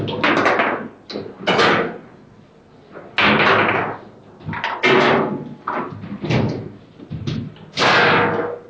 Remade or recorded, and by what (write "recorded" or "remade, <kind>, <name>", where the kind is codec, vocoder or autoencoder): recorded